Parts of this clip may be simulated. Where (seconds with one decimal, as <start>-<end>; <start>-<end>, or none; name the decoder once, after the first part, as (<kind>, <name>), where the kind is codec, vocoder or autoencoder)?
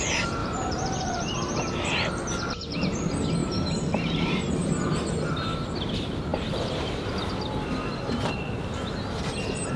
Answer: 0.4-1.6 (vocoder, BigVGAN v2); 3.4-5.1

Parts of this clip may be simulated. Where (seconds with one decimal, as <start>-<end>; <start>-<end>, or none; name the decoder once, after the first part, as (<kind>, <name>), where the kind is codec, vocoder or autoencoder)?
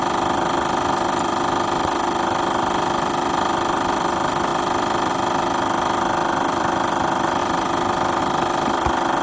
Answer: 4.5-5.1 (vocoder, BigVGAN v2); 6.2-6.9; 7.4-8.2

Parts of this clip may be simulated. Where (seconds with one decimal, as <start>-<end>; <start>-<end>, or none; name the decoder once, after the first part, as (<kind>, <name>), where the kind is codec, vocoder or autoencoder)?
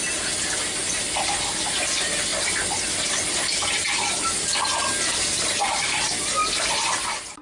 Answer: 6.4-7.0 (vocoder, BigVGAN v2)